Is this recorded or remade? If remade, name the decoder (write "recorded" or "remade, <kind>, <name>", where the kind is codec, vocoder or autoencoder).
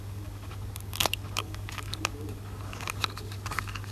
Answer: remade, codec, DAC